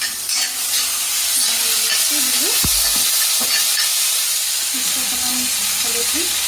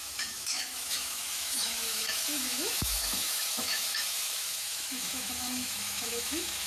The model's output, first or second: second